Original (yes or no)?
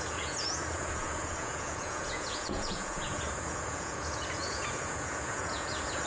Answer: no